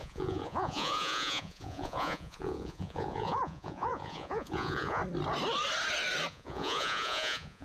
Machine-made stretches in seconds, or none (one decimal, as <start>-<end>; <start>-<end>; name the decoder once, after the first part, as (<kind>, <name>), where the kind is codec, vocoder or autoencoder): 0.0-5.0 (vocoder, Vocos); 6.3-7.6